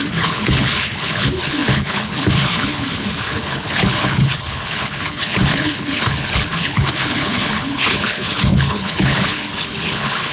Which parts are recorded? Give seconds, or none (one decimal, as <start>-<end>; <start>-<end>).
none